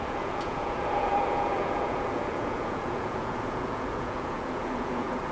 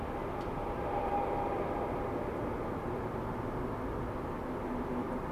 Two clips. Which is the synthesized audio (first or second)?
first